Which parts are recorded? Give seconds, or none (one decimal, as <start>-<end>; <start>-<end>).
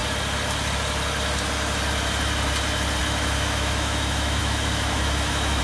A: 0.0-3.0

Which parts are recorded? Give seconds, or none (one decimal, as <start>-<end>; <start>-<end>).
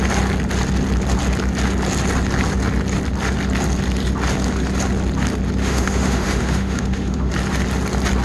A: 0.0-5.6; 7.3-8.2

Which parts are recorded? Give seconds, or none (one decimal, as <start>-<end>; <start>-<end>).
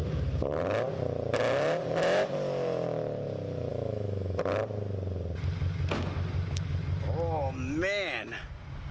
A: 0.0-3.7; 4.4-8.9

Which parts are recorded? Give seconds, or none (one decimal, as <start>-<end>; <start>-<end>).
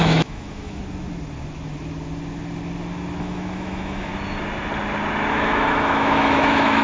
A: 0.8-3.2; 4.1-5.3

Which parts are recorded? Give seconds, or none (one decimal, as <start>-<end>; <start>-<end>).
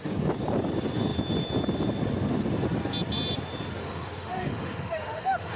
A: 0.0-3.8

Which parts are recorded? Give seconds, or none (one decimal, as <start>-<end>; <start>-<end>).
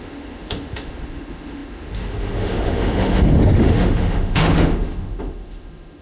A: none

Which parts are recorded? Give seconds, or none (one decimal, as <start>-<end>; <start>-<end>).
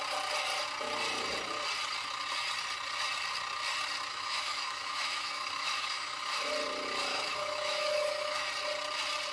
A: 0.0-4.1; 6.5-7.1; 8.5-9.3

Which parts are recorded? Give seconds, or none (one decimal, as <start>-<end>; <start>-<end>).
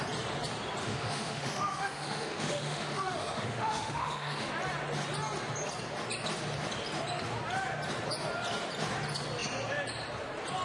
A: 0.0-0.8; 4.5-10.6